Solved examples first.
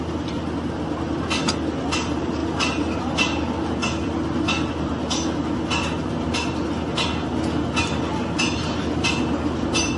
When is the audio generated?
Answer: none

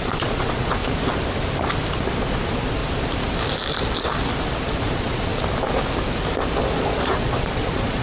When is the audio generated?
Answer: 0.0-0.8 (vocoder, Vocos); 2.2-2.8; 4.6-5.3; 6.8-8.0

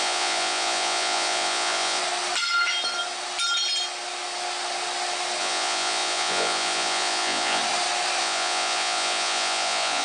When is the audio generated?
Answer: 0.0-2.0 (vocoder, Vocos); 5.4-7.6; 8.2-10.0